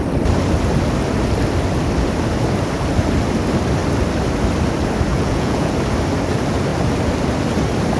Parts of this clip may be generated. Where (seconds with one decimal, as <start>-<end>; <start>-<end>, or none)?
5.1-5.7